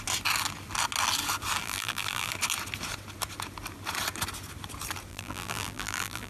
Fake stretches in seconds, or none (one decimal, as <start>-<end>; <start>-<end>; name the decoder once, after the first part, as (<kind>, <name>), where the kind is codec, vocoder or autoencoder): 1.6-2.3 (vocoder, BigVGAN v2); 5.1-6.3